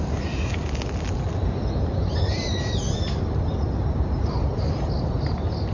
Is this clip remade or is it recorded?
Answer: recorded